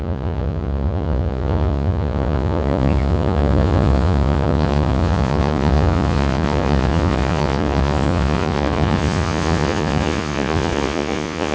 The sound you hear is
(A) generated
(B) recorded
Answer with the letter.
A